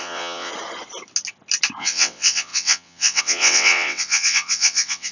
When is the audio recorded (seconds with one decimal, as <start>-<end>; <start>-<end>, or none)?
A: 0.5-1.8